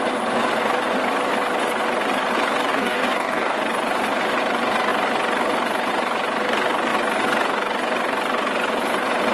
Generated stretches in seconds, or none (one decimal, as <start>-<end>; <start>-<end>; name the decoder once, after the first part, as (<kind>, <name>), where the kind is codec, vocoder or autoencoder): 2.7-3.6 (codec, DAC)